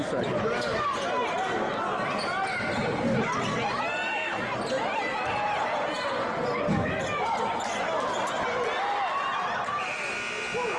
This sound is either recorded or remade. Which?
recorded